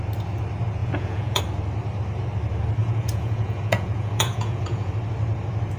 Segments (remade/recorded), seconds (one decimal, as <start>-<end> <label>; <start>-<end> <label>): 0.0-0.8 recorded; 0.8-1.4 remade; 1.4-2.8 recorded; 2.8-4.9 remade; 4.9-5.8 recorded